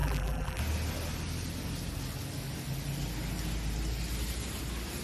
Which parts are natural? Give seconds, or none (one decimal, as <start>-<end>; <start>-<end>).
0.6-5.0

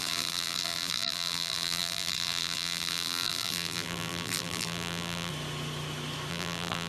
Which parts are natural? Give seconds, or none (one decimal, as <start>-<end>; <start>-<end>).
5.3-6.3

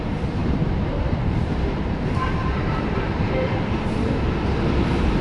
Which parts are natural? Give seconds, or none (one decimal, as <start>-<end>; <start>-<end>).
none

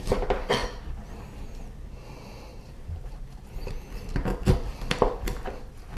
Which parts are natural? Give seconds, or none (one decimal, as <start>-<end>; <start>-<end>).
0.0-0.6; 1.2-2.5; 3.7-6.0

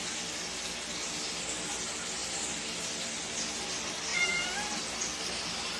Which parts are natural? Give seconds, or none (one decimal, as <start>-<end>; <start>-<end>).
0.0-2.2; 3.2-4.1

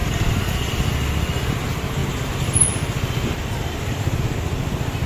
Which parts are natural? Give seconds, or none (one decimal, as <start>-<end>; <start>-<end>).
0.0-5.1

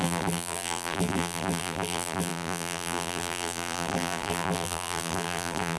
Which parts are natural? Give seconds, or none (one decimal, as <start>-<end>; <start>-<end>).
none